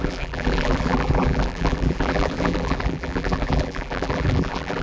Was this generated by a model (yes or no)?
yes